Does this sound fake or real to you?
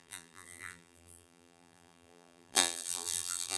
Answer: fake